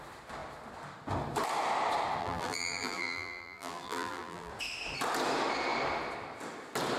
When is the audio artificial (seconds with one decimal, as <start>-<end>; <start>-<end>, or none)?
2.2-4.5